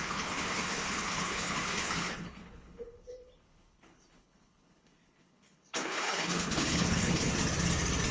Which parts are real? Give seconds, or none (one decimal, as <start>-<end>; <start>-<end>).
7.3-8.1